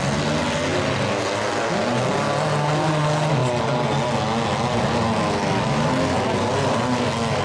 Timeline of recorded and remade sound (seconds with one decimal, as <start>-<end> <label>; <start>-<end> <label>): 0.0-7.4 recorded

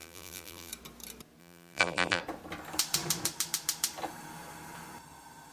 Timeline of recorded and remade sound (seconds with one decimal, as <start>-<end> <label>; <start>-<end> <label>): 0.0-0.7 remade; 0.7-1.4 recorded; 1.4-2.2 remade; 2.2-5.5 recorded

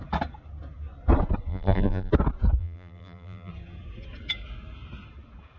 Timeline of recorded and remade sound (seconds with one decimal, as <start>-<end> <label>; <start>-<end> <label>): 0.0-1.5 recorded; 1.5-2.1 remade; 2.1-2.6 recorded; 2.6-3.5 remade; 3.5-5.6 recorded

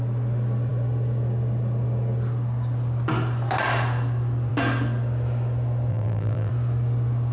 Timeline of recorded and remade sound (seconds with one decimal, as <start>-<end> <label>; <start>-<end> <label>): 0.0-5.9 recorded; 5.9-6.5 remade; 6.5-7.3 recorded